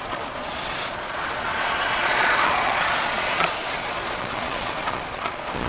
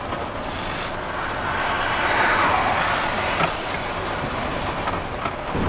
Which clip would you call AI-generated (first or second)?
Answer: first